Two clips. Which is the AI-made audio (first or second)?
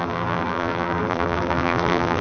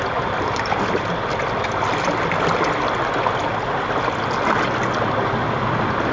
first